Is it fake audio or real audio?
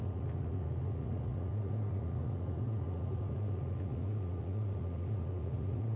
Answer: fake